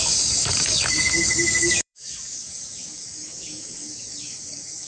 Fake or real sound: fake